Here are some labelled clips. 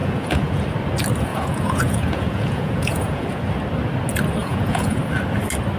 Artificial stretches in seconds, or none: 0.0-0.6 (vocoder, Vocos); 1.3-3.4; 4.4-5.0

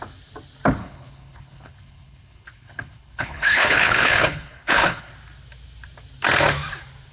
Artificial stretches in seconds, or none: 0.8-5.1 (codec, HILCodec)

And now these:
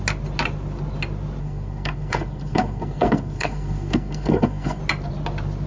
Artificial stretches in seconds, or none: 1.4-4.8 (codec, SNAC)